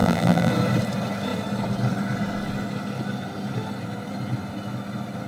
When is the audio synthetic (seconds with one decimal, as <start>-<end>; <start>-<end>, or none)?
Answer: 0.0-0.5